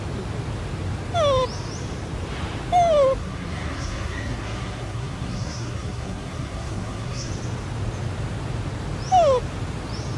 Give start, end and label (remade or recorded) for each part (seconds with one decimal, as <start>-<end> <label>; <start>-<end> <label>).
0.0-3.2 recorded; 3.2-7.3 remade; 7.3-10.2 recorded